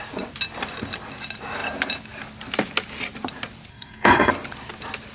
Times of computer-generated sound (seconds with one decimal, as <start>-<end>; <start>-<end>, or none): 3.7-4.3